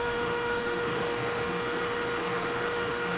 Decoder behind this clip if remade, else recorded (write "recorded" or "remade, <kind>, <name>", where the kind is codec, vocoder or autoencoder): remade, autoencoder, DAC-VAE